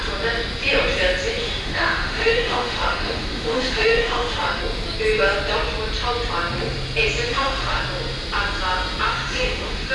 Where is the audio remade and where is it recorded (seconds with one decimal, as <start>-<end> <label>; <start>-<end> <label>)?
0.0-1.4 recorded; 1.4-4.6 remade; 4.6-7.3 recorded; 7.3-7.8 remade; 7.8-9.1 recorded; 9.1-9.9 remade